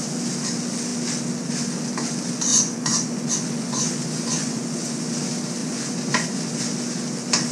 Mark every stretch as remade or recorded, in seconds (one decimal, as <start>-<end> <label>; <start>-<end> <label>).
0.0-2.5 recorded; 2.5-5.1 remade; 5.1-5.6 recorded; 5.6-6.5 remade; 6.5-7.5 recorded